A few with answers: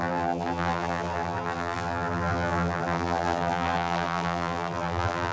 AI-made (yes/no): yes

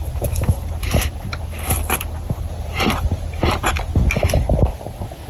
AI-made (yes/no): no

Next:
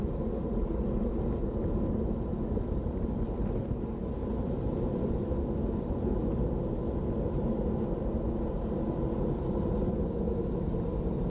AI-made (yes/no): no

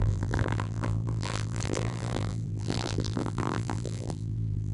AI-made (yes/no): yes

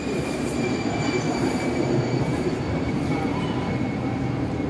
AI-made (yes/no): yes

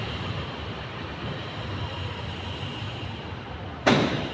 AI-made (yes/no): yes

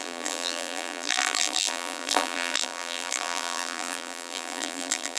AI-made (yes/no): yes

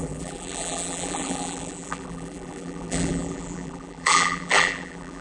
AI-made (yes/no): yes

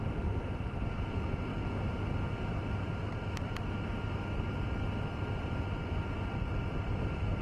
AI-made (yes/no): no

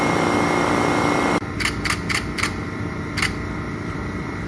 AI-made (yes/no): yes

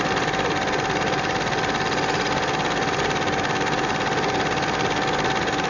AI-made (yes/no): no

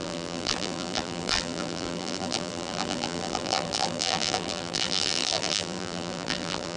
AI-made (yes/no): yes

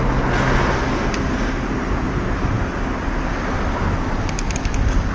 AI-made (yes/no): no